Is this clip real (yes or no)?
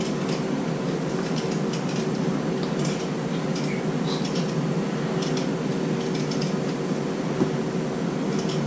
yes